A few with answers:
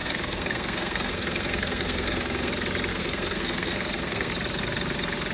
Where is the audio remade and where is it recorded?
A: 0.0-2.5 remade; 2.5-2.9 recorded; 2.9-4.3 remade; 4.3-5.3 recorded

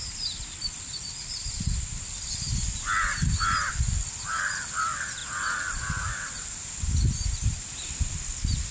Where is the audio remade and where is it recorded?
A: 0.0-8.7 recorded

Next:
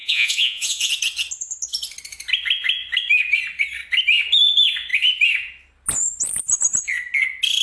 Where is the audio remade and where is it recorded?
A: 0.0-0.9 remade; 0.9-7.6 recorded